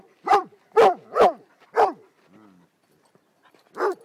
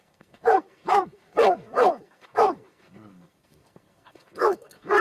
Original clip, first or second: first